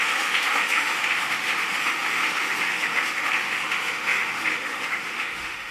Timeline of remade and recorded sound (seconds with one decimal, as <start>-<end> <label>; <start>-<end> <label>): 0.0-5.7 remade